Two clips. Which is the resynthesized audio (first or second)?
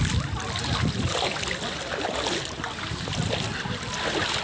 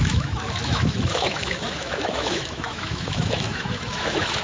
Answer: second